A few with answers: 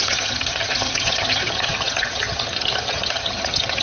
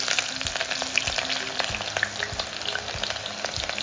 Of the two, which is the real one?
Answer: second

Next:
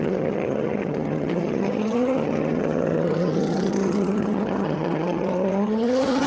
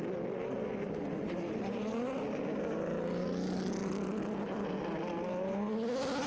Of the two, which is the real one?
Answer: second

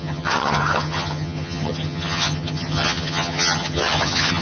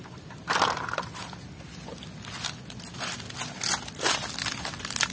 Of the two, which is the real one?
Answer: second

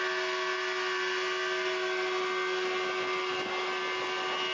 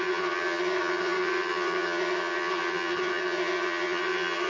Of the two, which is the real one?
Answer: first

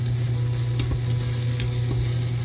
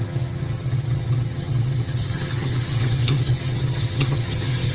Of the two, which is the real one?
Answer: first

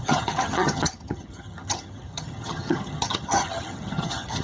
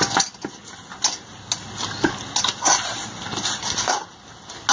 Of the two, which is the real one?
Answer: second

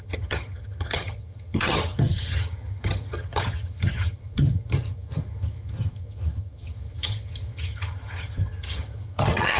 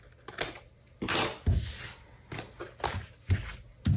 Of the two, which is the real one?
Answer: second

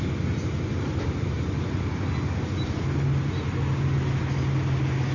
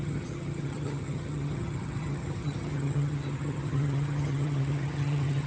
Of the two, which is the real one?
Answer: first